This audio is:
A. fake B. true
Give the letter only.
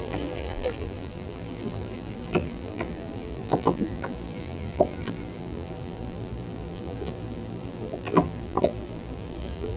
A